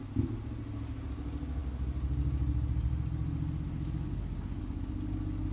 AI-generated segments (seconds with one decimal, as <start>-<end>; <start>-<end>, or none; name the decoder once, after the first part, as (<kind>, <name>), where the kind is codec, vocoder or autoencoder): none